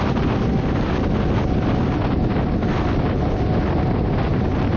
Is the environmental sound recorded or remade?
recorded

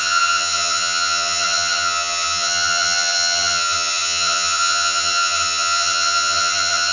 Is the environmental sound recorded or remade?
remade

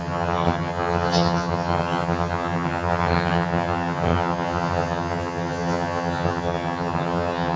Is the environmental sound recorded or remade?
remade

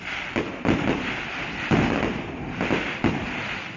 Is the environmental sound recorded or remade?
recorded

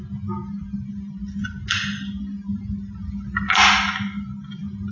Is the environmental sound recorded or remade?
recorded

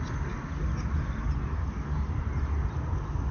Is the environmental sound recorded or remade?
recorded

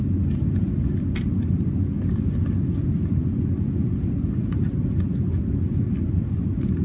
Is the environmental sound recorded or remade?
recorded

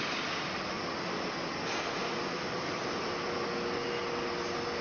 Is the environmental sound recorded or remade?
recorded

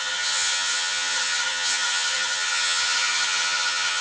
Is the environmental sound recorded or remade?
remade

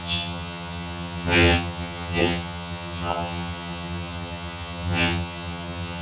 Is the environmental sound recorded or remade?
remade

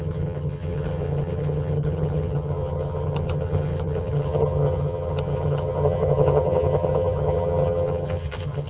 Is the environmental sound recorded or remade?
remade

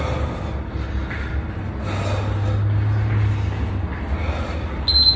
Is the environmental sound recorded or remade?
recorded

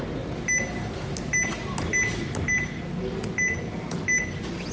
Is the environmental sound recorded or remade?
recorded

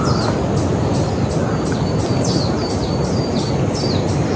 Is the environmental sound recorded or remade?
recorded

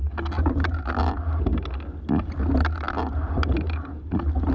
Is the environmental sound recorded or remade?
recorded